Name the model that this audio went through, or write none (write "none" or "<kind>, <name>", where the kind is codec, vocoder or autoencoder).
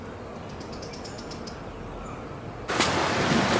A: none